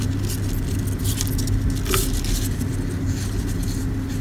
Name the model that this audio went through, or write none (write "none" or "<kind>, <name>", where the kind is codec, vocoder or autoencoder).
none